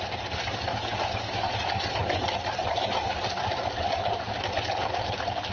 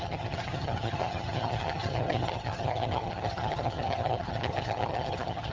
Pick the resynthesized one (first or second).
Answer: second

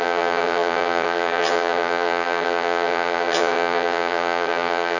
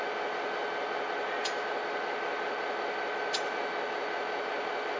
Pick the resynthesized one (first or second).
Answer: first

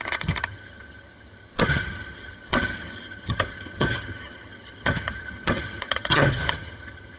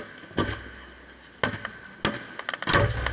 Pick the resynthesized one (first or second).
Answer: first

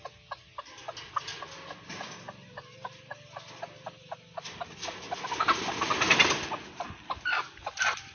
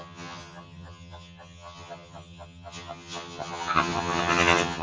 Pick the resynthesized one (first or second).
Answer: second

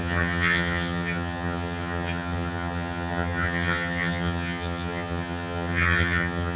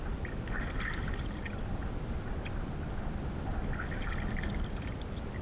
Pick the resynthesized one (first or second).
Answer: first